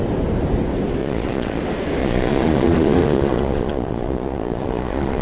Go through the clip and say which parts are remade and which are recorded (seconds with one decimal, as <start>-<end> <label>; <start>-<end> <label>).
0.0-1.0 recorded; 1.0-1.6 remade; 1.6-2.0 recorded; 2.0-5.2 remade

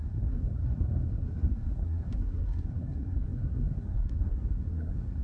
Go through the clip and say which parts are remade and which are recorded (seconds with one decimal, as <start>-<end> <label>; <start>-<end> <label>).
0.0-5.2 remade

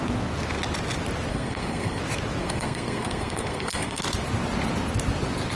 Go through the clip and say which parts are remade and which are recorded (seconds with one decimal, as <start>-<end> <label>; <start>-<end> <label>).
0.0-1.3 recorded; 1.3-2.0 remade; 2.0-2.4 recorded; 2.4-4.0 remade; 4.0-5.6 recorded

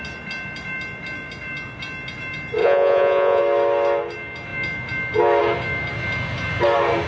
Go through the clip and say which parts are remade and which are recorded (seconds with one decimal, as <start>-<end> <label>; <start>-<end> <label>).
0.0-2.6 recorded; 2.6-3.4 remade; 3.4-7.1 recorded

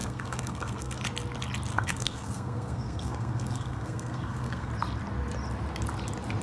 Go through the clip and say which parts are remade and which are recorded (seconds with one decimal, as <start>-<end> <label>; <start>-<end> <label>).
0.0-1.0 remade; 1.0-1.7 recorded; 1.7-4.7 remade; 4.7-6.4 recorded

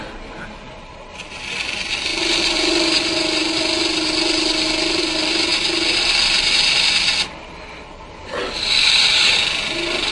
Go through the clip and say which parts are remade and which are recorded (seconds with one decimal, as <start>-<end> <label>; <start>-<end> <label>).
0.0-10.1 recorded